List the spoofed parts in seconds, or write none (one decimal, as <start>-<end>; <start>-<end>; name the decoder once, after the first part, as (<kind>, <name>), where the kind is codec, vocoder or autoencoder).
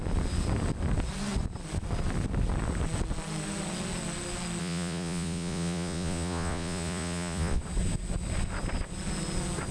4.6-7.6 (vocoder, Vocos)